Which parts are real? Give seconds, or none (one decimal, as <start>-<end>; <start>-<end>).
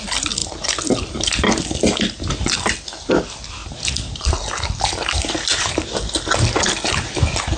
0.0-7.6